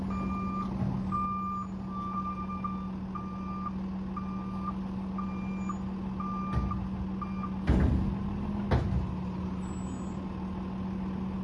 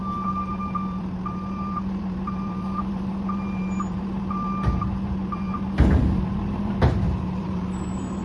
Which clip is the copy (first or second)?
second